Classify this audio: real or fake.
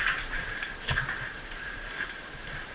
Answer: fake